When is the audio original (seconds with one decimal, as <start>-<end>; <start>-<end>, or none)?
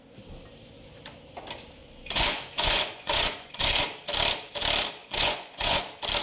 0.0-1.8; 3.8-5.0; 5.8-6.2